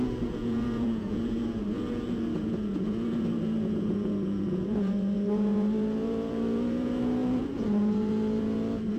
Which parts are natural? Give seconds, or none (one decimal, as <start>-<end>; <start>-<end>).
none